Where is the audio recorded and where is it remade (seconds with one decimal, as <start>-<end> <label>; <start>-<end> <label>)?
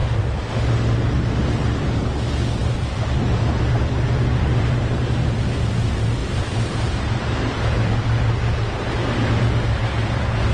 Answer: 0.0-0.5 remade; 0.5-2.6 recorded; 2.6-3.1 remade; 3.1-6.2 recorded; 6.2-7.9 remade; 7.9-10.5 recorded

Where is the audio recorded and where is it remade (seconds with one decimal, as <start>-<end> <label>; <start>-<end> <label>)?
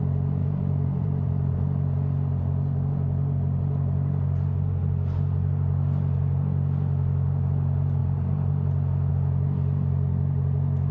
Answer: 0.0-0.4 recorded; 0.4-1.5 remade; 1.5-10.9 recorded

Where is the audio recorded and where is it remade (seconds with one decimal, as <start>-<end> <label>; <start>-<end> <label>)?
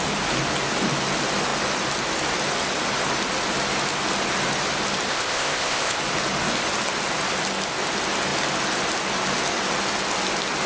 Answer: 0.0-5.1 recorded; 5.1-6.0 remade; 6.0-10.7 recorded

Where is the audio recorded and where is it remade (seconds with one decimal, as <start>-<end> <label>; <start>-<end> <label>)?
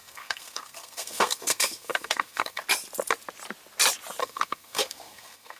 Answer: 0.0-2.6 remade; 2.6-4.2 recorded; 4.2-5.6 remade